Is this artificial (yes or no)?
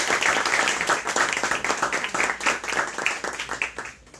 no